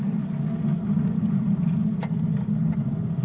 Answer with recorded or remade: recorded